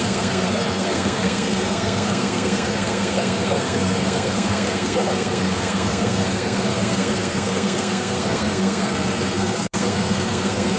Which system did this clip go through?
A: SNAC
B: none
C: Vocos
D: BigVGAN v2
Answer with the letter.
A